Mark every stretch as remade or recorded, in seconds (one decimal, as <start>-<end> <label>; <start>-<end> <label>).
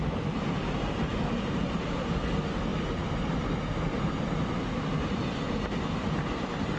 0.0-1.1 recorded; 1.1-2.0 remade; 2.0-6.8 recorded